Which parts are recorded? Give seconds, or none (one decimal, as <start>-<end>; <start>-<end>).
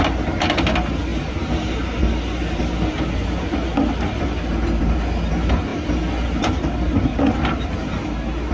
0.0-8.5